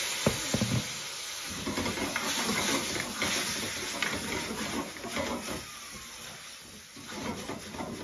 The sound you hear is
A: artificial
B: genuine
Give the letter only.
B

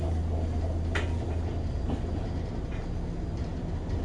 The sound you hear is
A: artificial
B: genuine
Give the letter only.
B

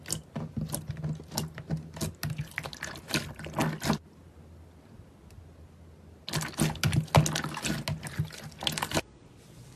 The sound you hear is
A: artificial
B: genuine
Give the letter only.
B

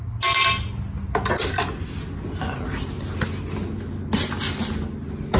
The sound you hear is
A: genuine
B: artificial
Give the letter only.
A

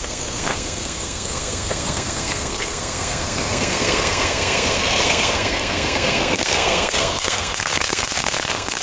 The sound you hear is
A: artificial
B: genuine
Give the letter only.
A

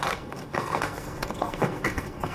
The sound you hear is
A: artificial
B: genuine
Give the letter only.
A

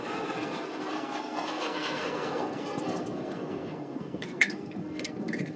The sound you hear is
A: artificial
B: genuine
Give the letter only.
A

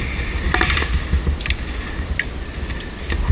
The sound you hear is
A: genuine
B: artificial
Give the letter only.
A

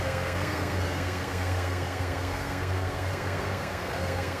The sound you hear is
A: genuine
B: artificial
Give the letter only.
B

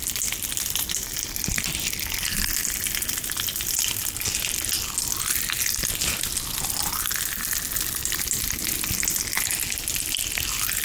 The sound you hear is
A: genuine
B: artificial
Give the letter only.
A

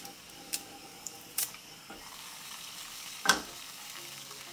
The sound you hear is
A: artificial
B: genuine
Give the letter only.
A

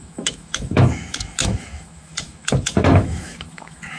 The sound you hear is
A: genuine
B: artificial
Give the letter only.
B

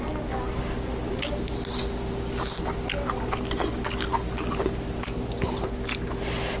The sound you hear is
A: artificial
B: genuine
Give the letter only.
B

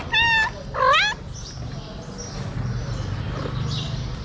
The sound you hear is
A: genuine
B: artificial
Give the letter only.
A